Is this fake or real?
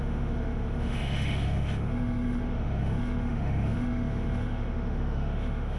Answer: fake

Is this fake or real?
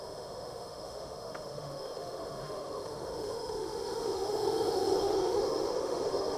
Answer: fake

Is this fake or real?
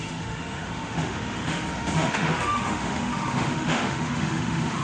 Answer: fake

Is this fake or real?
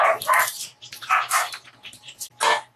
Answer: real